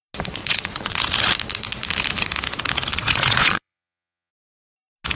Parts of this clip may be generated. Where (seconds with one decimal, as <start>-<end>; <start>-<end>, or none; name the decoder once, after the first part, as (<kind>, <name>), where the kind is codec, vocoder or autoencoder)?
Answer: 0.4-1.0 (vocoder, Vocos); 2.9-4.3